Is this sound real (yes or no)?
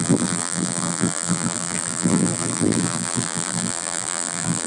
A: no